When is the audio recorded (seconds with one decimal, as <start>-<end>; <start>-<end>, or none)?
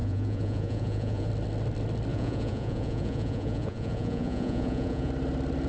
1.3-2.1; 5.1-5.7